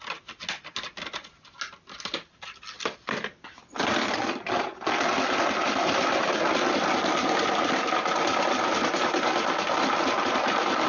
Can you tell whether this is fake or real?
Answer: real